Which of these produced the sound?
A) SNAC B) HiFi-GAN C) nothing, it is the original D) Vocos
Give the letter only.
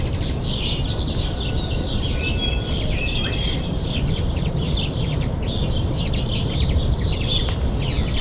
C